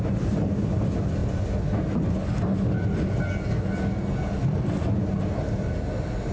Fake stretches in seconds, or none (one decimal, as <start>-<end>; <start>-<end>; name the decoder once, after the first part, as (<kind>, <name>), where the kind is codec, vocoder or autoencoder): none